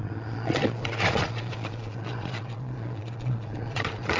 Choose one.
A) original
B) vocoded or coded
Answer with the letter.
B